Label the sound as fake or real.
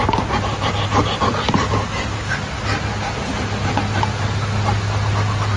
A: real